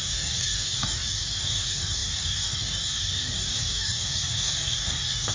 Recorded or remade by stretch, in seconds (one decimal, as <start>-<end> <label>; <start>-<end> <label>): 0.0-5.3 remade